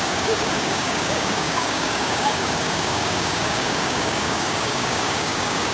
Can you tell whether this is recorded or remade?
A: remade